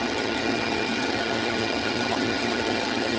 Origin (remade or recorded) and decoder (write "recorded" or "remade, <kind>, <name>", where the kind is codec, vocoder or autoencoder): remade, vocoder, HiFi-GAN